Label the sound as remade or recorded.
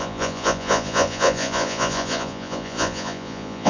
remade